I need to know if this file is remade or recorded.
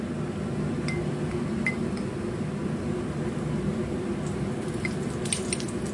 recorded